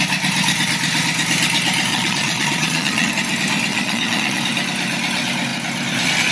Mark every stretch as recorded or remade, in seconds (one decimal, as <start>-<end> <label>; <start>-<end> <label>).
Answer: 0.0-1.9 recorded; 1.9-3.1 remade; 3.1-3.7 recorded; 3.7-4.4 remade; 4.4-6.3 recorded